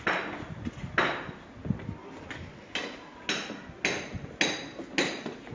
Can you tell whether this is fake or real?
real